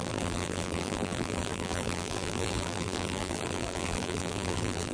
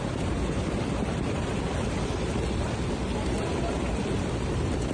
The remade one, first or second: first